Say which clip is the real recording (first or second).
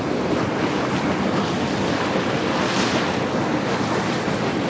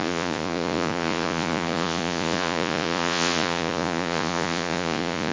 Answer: first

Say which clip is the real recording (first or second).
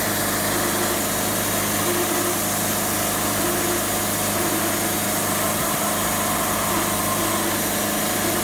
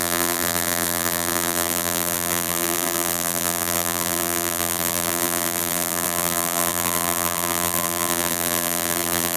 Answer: first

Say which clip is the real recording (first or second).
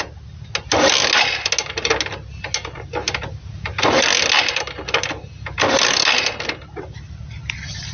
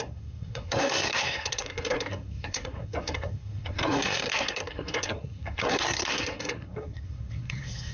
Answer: first